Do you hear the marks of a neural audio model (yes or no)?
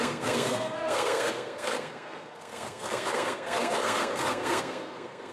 yes